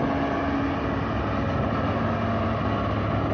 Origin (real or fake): real